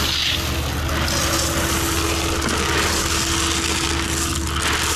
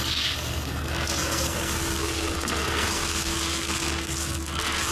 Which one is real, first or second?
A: first